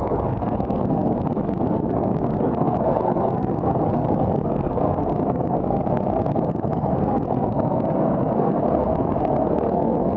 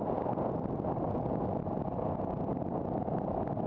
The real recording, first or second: second